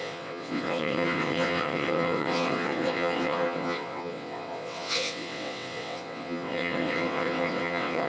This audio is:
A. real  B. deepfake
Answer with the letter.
B